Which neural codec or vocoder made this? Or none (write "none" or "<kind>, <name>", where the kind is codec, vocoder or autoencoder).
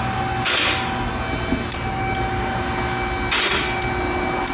none